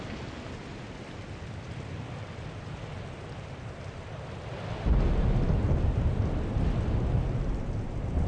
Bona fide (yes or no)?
yes